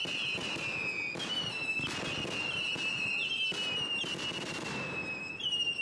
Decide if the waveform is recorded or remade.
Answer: recorded